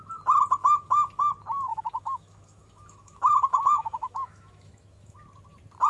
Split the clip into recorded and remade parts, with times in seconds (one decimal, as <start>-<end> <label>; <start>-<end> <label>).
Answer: 0.0-0.6 recorded; 0.6-1.2 remade; 1.2-1.7 recorded; 1.7-5.2 remade; 5.2-5.9 recorded